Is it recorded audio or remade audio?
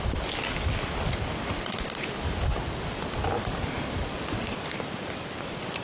recorded